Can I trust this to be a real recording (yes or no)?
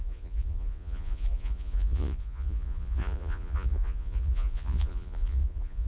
no